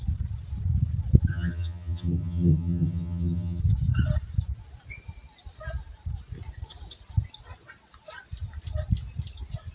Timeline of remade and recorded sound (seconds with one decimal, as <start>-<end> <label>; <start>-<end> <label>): 0.0-1.3 recorded; 1.3-3.6 remade; 3.6-9.7 recorded